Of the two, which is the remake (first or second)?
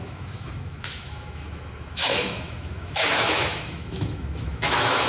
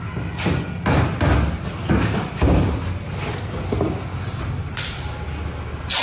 first